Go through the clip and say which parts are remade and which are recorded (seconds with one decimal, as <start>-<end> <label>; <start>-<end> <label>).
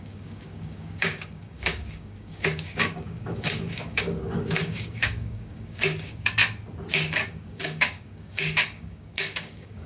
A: 0.0-6.4 remade; 6.4-6.9 recorded; 6.9-9.9 remade